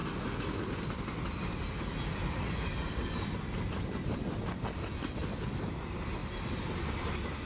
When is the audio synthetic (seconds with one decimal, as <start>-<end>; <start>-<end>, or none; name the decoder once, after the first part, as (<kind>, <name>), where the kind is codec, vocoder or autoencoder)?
none